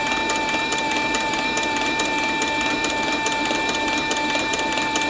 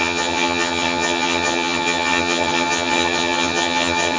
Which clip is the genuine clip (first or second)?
first